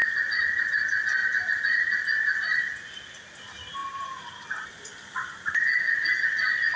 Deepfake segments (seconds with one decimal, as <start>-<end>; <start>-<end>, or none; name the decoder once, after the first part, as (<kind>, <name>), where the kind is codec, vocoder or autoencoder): 0.0-0.6 (vocoder, BigVGAN v2); 1.2-2.9; 3.8-5.5